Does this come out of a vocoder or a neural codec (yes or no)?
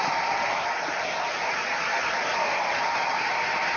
no